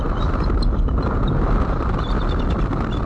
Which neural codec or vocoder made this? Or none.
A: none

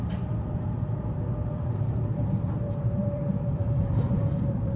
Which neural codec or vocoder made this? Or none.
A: vocoder, BigVGAN v2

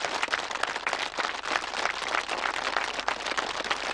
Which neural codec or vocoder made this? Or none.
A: none